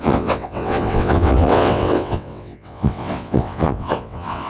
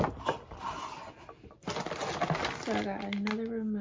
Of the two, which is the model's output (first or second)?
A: first